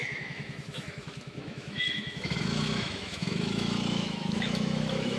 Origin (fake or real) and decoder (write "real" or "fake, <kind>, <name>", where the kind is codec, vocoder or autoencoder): fake, autoencoder, DAC-VAE